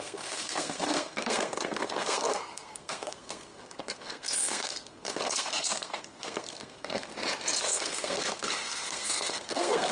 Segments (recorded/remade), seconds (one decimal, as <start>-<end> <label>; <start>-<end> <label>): 0.0-7.1 remade; 7.1-7.6 recorded; 7.6-9.9 remade